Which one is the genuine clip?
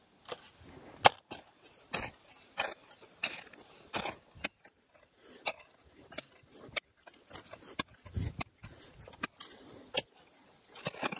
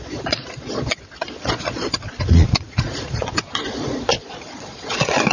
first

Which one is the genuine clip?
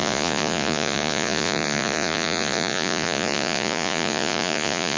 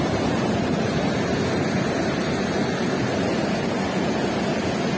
second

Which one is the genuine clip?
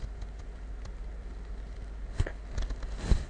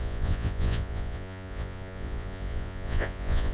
first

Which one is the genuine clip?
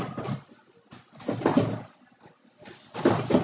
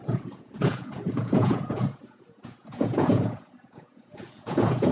first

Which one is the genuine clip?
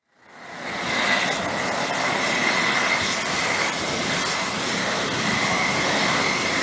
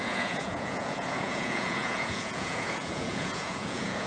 first